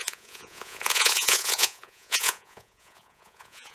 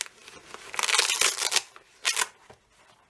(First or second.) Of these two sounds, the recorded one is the second